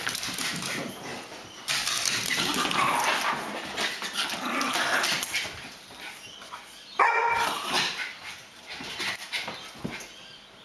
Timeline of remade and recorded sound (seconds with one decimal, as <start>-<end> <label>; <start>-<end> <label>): 0.0-7.2 recorded; 7.2-10.1 remade; 10.1-10.6 recorded